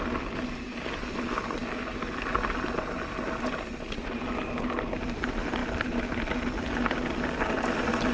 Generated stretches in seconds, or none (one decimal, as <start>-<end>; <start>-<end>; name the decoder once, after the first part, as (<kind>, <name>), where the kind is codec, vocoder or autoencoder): none